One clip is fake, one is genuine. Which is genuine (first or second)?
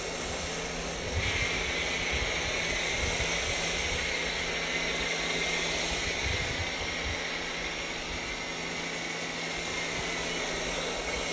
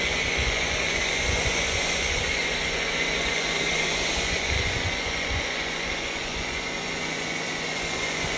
first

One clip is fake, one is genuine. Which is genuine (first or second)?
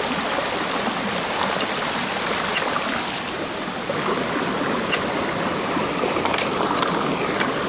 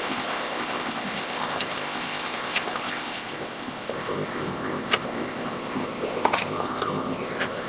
first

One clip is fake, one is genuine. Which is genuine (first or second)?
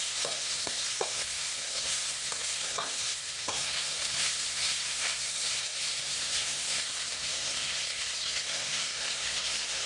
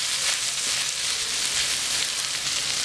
second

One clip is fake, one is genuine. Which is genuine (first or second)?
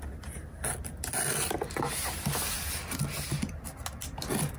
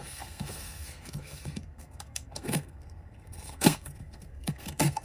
first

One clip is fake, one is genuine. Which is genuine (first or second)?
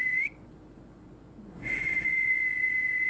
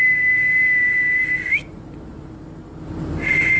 second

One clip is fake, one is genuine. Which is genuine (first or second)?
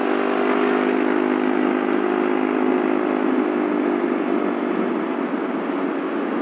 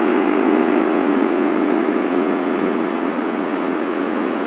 first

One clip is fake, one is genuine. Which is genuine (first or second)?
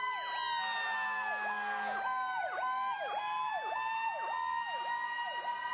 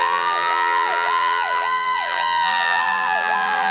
first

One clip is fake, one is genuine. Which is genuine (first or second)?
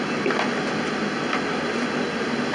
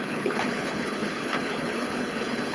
first